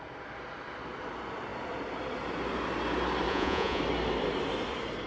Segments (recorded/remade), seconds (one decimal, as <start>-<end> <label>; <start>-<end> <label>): 0.0-3.3 recorded; 3.3-3.8 remade; 3.8-5.1 recorded